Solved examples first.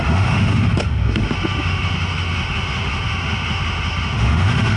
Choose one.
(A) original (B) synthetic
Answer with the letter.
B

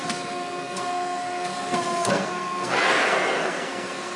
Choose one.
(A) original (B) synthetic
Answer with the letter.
B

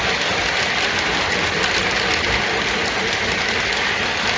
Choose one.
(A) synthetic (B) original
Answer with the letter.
B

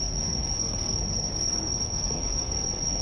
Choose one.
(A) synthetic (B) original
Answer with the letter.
A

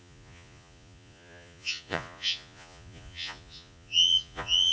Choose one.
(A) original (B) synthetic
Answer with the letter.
B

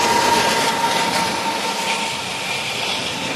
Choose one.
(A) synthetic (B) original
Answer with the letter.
B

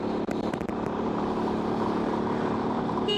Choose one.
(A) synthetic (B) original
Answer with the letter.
A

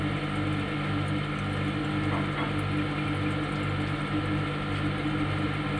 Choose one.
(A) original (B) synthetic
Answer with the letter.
A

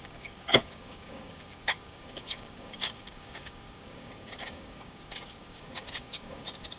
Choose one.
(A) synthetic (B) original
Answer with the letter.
A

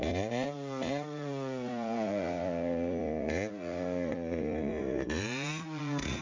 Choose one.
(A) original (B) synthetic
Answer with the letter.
B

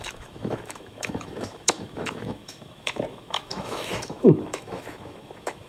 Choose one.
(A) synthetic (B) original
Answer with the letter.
A